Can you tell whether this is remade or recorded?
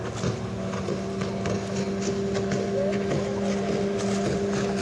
recorded